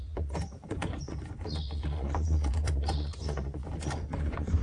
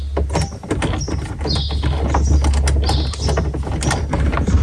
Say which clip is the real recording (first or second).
second